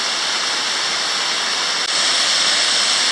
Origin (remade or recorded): recorded